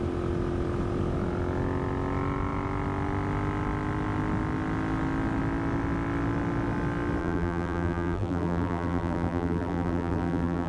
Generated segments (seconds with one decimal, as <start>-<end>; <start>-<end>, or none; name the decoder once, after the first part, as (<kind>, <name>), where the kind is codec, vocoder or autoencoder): 7.2-10.7 (vocoder, BigVGAN v2)